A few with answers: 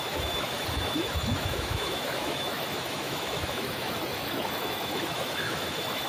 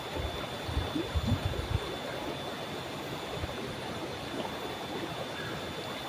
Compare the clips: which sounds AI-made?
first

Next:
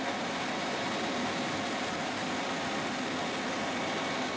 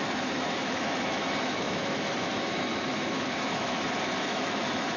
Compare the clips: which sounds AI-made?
second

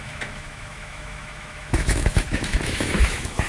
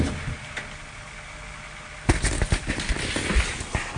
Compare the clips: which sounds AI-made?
first